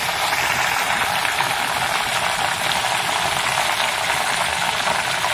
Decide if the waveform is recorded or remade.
recorded